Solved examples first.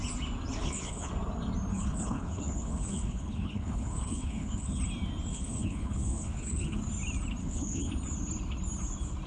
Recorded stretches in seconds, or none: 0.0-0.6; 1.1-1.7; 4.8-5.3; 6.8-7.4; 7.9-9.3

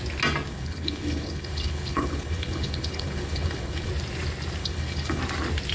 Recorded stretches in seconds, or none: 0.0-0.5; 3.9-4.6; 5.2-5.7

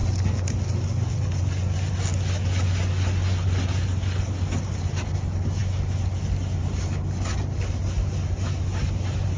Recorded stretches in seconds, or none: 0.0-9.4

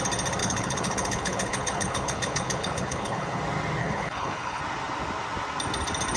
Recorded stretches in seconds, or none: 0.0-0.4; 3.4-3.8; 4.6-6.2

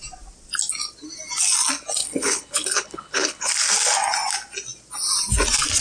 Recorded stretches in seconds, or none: 0.0-2.0; 3.5-5.8